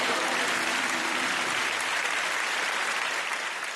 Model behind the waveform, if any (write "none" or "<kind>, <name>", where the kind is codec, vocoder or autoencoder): vocoder, BigVGAN v2